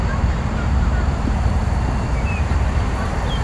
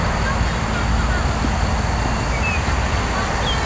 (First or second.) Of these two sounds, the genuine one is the second